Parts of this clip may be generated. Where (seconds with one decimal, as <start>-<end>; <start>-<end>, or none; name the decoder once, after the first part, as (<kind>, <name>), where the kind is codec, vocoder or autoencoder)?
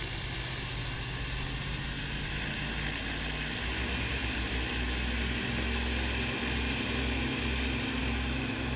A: none